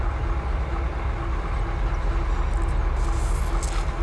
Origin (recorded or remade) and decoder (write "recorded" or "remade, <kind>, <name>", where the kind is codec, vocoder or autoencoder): recorded